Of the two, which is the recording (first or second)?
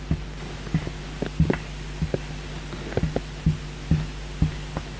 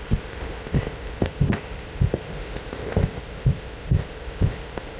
first